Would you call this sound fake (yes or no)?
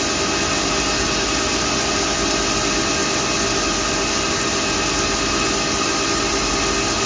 no